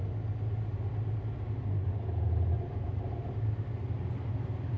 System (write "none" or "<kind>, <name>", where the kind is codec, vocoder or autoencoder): none